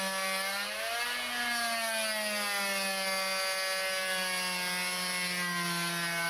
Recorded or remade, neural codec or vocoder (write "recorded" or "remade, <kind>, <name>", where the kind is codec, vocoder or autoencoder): recorded